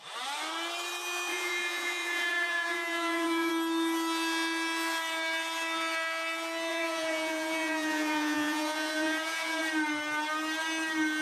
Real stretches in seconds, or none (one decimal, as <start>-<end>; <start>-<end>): 0.0-1.3; 3.5-6.7; 9.6-11.2